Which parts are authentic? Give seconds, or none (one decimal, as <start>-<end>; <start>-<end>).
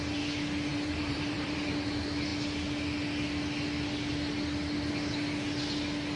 0.0-0.7; 1.6-6.2